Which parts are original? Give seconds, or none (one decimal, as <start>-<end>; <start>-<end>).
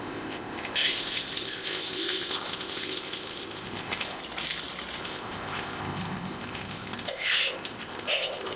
4.2-5.0